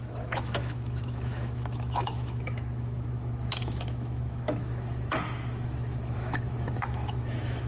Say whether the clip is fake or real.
fake